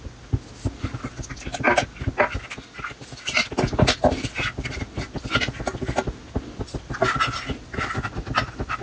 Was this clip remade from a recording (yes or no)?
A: no